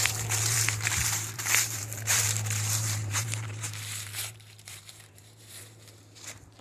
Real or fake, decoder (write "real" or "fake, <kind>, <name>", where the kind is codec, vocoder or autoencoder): fake, vocoder, BigVGAN v2